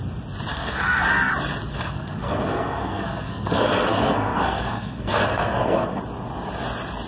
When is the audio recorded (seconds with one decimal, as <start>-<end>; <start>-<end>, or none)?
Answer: 0.0-0.5; 1.1-1.7; 6.0-7.1